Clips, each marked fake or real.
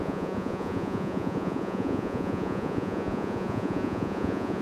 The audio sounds fake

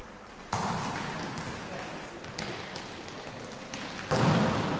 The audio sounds real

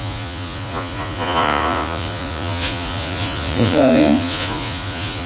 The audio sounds fake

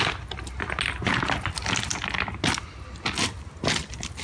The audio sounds real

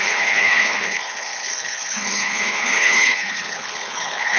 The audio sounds fake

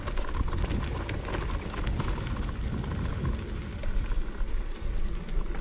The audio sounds real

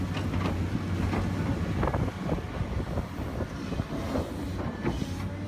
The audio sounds real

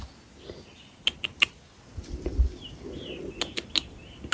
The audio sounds real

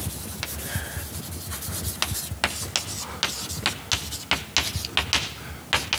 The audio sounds real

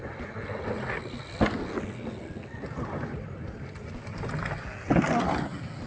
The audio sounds real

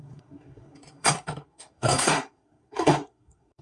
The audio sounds fake